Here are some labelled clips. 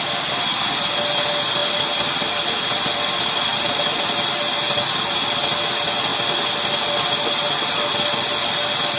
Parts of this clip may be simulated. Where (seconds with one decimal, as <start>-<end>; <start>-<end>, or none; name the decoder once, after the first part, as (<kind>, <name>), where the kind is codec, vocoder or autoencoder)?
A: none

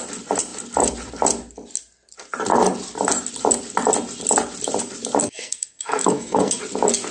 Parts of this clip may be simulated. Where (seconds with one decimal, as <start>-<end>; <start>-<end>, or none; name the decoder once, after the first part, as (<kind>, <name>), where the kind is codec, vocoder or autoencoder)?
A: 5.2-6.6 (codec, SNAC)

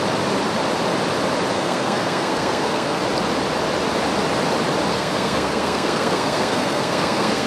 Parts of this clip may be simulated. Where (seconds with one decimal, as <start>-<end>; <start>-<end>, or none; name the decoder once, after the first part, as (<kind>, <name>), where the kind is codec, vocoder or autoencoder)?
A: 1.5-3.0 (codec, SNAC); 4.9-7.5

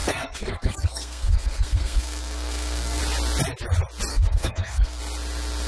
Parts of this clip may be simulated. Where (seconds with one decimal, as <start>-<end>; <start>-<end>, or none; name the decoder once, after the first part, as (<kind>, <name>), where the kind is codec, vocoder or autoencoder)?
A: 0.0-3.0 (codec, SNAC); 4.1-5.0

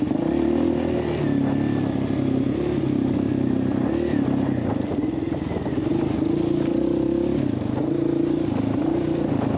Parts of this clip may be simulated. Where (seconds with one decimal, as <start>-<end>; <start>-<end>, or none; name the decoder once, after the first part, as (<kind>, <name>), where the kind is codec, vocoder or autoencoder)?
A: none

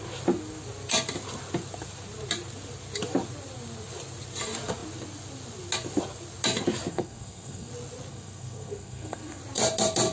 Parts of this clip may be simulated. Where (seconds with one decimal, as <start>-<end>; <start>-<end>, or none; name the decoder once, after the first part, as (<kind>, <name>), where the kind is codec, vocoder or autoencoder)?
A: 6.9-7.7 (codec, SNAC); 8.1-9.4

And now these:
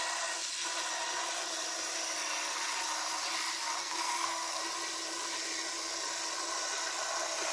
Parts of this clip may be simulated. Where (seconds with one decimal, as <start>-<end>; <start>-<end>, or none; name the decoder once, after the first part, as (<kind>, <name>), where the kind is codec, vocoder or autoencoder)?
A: 3.8-4.6 (codec, SNAC)